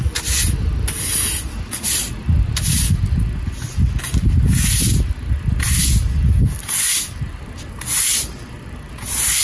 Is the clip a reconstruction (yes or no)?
no